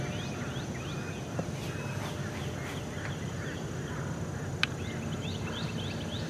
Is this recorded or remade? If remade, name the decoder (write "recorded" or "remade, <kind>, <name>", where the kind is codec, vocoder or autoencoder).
recorded